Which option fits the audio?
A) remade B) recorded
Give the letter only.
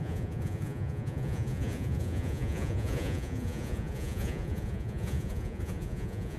A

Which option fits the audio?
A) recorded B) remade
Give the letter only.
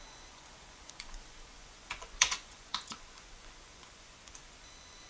B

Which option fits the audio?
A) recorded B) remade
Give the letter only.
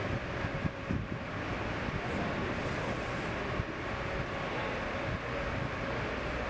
A